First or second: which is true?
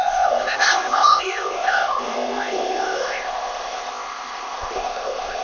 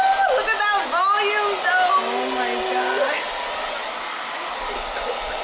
second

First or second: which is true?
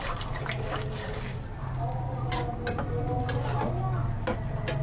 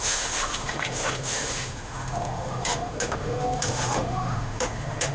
first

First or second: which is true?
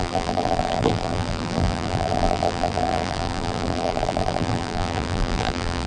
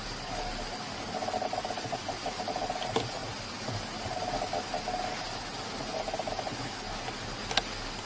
second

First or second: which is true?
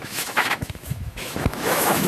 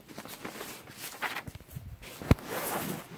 second